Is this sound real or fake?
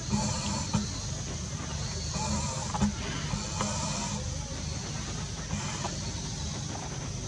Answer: real